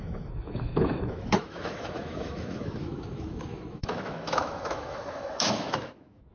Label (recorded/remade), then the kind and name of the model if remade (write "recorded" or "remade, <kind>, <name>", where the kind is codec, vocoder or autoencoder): remade, autoencoder, DAC-VAE